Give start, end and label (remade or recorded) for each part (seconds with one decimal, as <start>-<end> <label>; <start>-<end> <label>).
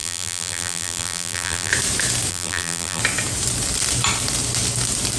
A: 0.0-1.7 remade; 1.7-2.3 recorded; 2.3-3.0 remade; 3.0-5.2 recorded